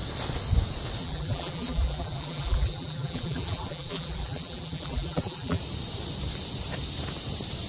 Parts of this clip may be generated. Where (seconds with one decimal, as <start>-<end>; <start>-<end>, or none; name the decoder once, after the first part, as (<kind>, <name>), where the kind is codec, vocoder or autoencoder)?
1.0-5.6 (vocoder, BigVGAN v2)